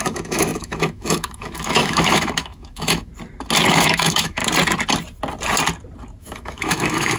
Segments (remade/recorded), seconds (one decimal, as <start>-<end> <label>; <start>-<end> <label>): 0.0-3.1 remade; 3.1-3.7 recorded; 3.7-4.4 remade; 4.4-6.2 recorded; 6.2-7.2 remade